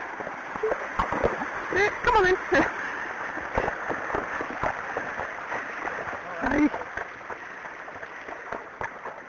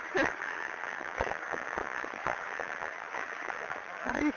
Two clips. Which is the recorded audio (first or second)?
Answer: first